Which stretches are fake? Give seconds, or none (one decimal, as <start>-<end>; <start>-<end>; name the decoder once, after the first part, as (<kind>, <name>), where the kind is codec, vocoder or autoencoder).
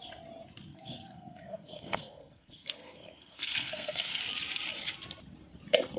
0.7-4.2 (codec, SNAC)